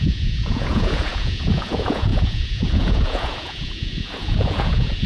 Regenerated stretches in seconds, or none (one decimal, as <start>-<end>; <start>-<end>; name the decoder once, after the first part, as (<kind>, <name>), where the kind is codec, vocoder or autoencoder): 0.0-5.1 (vocoder, Vocos)